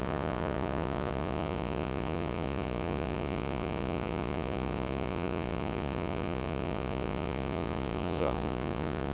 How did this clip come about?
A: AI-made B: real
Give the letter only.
A